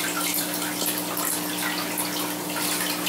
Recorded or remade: recorded